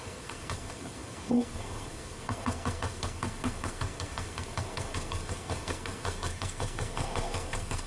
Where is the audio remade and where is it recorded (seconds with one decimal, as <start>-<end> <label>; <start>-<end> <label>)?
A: 0.0-7.9 remade